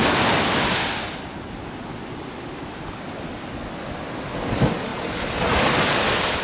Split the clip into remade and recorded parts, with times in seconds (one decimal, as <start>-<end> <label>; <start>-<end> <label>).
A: 0.0-6.4 recorded